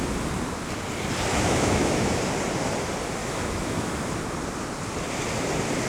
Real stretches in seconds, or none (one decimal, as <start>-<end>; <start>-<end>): 0.0-1.3; 2.2-3.2; 3.9-5.9